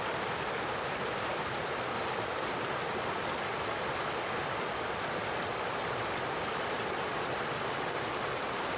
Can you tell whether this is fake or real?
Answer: real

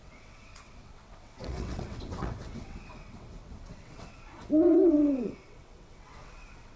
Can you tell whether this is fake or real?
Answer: fake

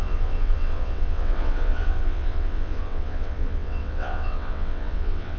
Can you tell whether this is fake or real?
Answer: fake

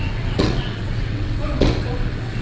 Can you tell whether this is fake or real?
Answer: fake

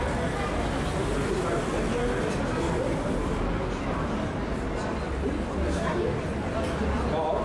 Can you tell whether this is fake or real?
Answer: real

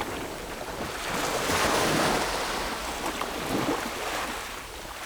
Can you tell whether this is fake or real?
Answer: real